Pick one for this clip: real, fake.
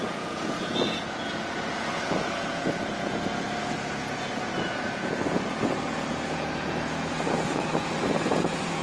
fake